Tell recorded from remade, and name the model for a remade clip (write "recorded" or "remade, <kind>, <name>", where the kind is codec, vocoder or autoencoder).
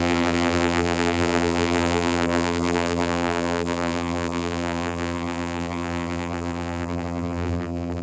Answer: remade, vocoder, BigVGAN v2